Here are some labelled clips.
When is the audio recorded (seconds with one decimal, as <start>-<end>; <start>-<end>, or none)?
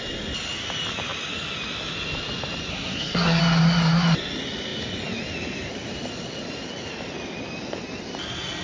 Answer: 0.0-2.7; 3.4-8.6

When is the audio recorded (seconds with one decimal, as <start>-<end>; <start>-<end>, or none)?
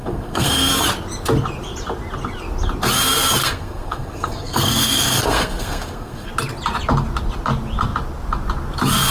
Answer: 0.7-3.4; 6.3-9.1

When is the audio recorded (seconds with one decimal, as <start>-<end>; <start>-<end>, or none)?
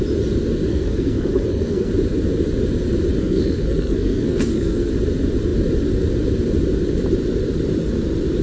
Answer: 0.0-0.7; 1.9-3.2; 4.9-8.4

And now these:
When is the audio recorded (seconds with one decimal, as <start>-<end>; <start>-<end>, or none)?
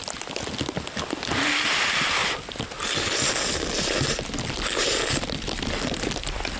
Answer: 0.0-6.6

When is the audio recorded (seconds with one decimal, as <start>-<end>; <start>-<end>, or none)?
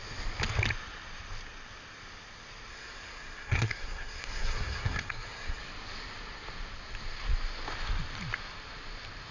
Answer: 0.0-2.7; 5.6-9.3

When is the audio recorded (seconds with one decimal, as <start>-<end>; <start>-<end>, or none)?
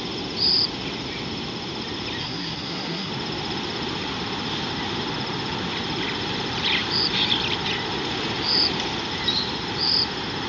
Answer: 0.0-2.2; 3.1-10.5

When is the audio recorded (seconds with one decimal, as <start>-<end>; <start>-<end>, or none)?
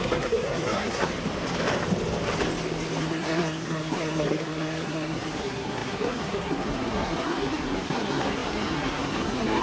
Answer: 1.1-3.0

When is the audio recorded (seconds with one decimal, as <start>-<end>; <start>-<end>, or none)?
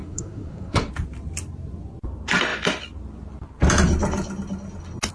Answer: 0.9-5.1